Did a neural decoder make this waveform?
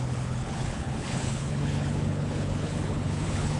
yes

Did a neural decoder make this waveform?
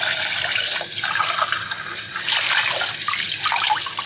no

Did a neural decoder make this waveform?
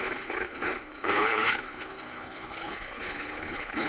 yes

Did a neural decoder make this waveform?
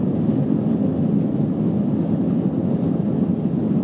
no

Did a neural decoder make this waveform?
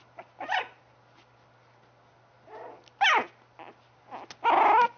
no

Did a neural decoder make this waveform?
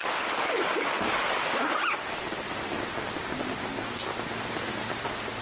no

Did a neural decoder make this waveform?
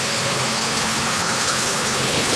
yes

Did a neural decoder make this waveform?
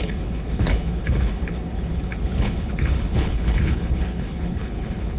yes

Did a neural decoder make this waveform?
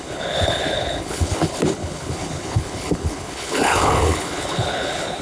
yes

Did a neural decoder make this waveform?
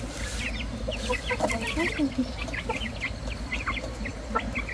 no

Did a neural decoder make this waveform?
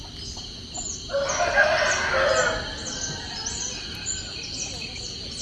no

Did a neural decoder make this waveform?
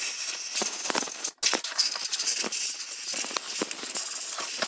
no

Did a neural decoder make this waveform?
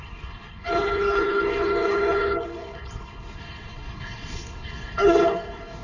yes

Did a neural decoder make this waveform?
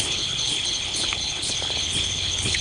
yes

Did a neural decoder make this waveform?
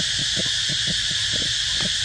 no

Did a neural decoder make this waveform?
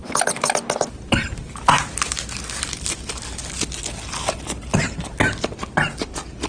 no